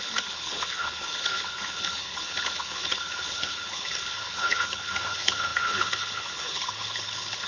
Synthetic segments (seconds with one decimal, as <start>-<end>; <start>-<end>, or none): 0.0-7.5